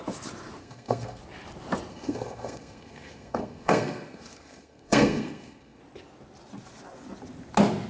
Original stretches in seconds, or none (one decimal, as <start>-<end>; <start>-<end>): 0.0-0.6; 1.2-1.9; 5.8-7.9